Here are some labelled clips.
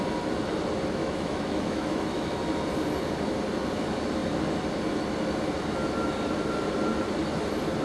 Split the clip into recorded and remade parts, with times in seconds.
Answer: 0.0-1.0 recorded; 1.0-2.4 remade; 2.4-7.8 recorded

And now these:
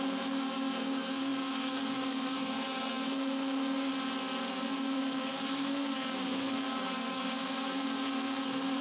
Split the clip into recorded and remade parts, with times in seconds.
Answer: 0.0-3.9 remade; 3.9-4.5 recorded; 4.5-8.8 remade

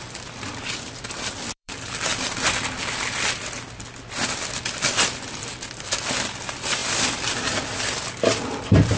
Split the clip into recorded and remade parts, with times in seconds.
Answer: 0.0-2.1 remade; 2.1-6.2 recorded; 6.2-9.0 remade

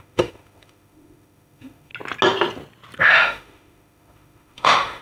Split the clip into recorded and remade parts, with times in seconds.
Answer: 0.0-1.9 remade; 1.9-3.0 recorded; 3.0-5.0 remade

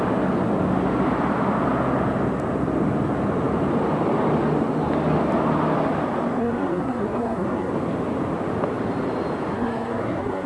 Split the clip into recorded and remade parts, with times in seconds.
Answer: 0.0-6.4 recorded; 6.4-7.7 remade; 7.7-9.5 recorded; 9.5-10.5 remade

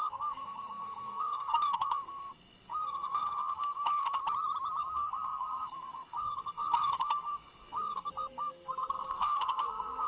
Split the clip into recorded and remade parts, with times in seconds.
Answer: 0.0-4.2 remade; 4.2-4.8 recorded; 4.8-10.1 remade